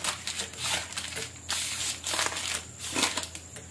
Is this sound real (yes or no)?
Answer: yes